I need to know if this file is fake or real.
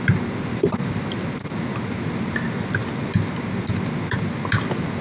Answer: real